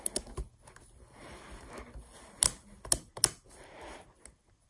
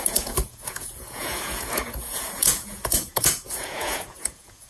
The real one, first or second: first